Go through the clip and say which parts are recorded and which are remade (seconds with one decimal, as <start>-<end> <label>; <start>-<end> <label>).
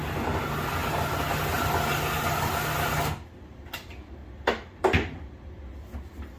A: 0.0-6.4 recorded